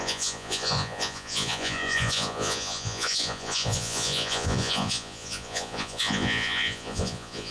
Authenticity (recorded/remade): remade